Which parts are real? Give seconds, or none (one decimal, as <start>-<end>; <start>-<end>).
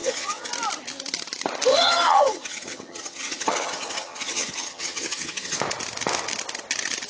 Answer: 0.5-1.7; 5.6-7.1